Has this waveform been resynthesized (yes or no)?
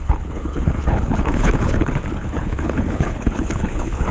yes